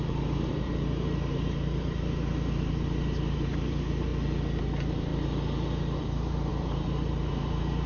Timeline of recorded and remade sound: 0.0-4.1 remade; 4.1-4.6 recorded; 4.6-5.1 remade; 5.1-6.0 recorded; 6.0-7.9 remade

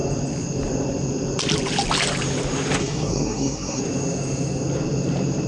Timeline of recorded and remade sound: 0.0-2.8 recorded; 2.8-3.8 remade; 3.8-5.5 recorded

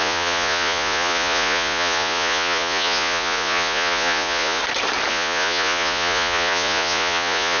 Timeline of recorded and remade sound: 0.0-4.6 remade; 4.6-5.1 recorded; 5.1-7.6 remade

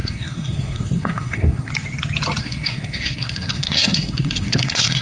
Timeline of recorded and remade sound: 0.0-1.7 remade; 1.7-2.4 recorded; 2.4-5.0 remade

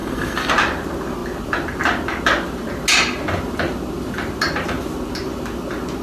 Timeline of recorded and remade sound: 0.0-0.5 remade; 0.5-6.0 recorded